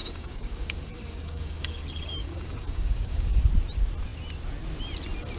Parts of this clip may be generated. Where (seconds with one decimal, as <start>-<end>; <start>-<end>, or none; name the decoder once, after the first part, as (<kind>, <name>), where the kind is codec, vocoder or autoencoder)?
0.0-1.8 (codec, DAC); 2.2-3.4